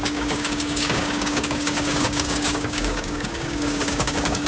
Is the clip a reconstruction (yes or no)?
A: yes